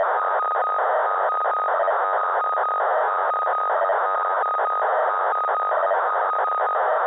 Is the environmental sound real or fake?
real